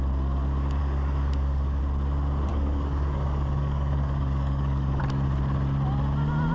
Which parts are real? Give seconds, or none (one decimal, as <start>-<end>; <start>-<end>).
0.0-0.8; 1.8-2.5; 5.0-6.5